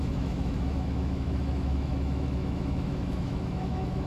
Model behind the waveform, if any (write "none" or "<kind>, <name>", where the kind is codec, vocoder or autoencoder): autoencoder, DAC-VAE